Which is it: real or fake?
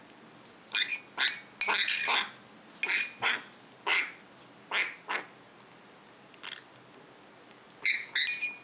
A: real